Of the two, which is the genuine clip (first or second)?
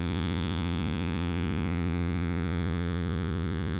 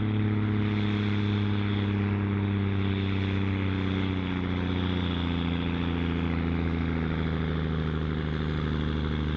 second